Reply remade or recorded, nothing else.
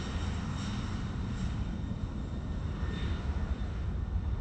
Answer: recorded